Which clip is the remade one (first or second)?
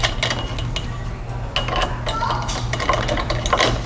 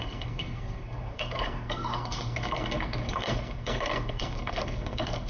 second